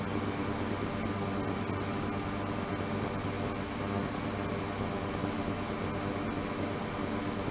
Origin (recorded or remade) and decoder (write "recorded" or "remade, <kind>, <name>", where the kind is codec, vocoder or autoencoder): recorded